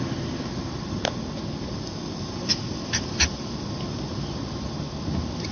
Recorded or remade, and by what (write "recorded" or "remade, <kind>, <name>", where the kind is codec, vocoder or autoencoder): recorded